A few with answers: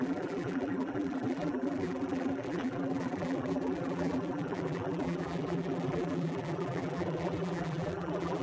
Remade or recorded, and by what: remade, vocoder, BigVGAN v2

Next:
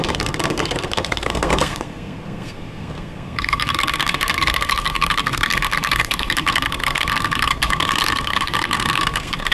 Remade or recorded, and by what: remade, codec, SNAC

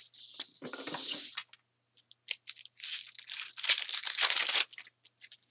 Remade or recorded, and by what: recorded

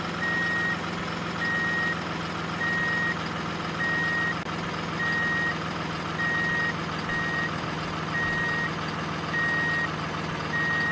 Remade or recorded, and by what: recorded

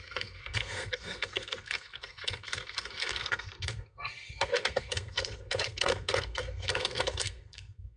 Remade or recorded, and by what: remade, codec, SNAC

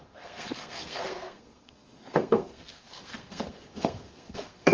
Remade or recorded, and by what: remade, codec, SNAC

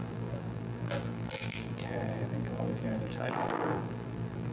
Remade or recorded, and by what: remade, vocoder, BigVGAN v2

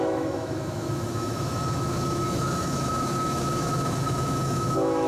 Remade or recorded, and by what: remade, autoencoder, DAC-VAE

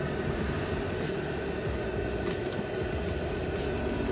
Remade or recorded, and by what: recorded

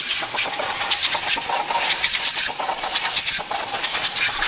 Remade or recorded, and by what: recorded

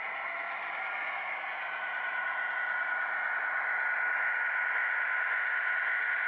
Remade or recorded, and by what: recorded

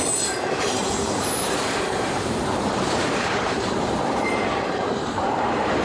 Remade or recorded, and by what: remade, vocoder, BigVGAN v2